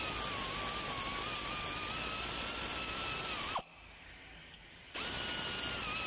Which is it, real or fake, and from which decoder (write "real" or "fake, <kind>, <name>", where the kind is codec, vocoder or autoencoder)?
real